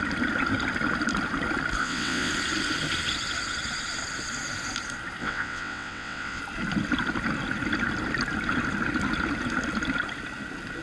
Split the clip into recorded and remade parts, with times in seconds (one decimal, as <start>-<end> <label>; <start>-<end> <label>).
0.0-1.8 recorded; 1.8-2.3 remade; 2.3-5.2 recorded; 5.2-6.4 remade; 6.4-10.8 recorded